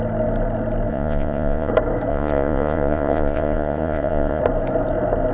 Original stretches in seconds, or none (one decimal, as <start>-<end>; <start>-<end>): 0.0-0.9; 1.7-2.1; 4.4-5.3